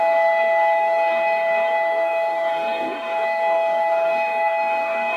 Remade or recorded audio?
remade